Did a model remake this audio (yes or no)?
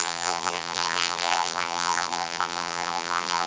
yes